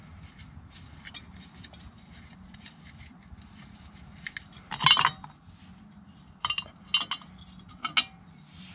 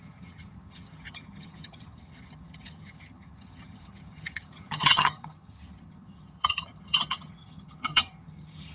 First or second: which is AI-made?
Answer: second